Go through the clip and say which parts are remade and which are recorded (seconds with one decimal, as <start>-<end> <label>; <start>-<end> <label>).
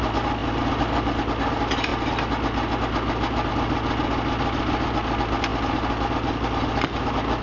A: 0.0-7.4 recorded